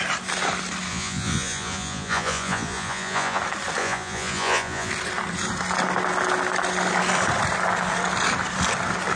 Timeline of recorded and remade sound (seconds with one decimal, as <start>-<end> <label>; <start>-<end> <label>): 0.0-0.9 recorded; 0.9-3.4 remade; 3.4-3.8 recorded; 3.8-4.9 remade; 4.9-9.2 recorded